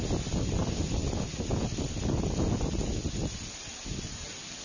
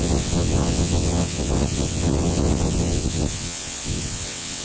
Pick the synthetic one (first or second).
second